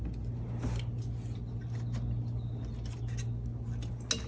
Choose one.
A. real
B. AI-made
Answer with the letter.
A